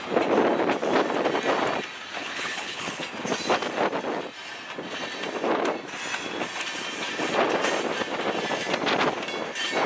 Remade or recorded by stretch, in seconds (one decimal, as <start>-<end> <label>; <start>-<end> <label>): 0.0-2.2 recorded; 2.2-3.0 remade; 3.0-9.9 recorded